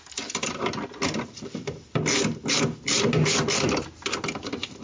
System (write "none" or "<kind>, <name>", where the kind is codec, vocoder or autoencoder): none